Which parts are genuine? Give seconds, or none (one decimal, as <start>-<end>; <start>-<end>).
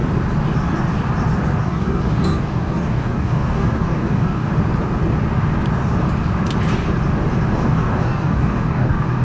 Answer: 0.0-1.6; 4.5-7.5